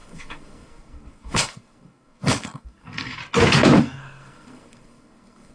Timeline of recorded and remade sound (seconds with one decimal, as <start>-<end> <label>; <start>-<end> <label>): 0.0-3.2 remade; 3.2-3.8 recorded; 3.8-5.5 remade